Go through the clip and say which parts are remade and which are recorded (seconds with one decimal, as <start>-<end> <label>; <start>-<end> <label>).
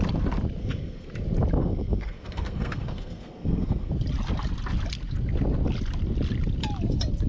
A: 0.0-0.6 recorded; 0.6-1.1 remade; 1.1-1.6 recorded; 1.6-3.9 remade; 3.9-7.3 recorded